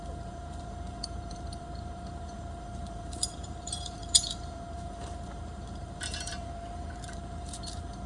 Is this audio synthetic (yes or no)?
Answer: yes